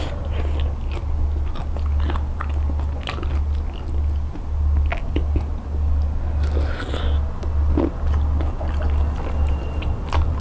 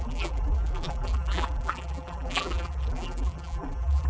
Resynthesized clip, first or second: second